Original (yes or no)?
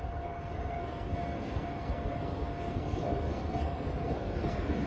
no